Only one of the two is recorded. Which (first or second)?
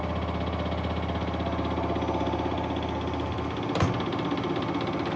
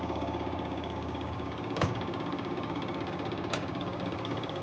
first